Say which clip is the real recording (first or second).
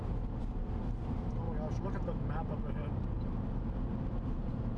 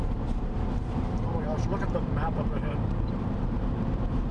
first